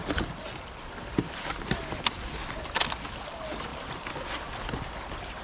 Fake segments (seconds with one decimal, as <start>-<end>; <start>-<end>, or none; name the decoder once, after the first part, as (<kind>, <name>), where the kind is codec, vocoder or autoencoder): 3.7-4.6 (vocoder, BigVGAN v2)